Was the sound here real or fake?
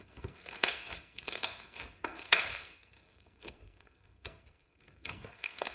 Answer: fake